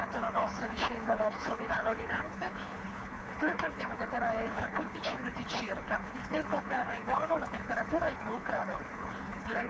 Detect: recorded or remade remade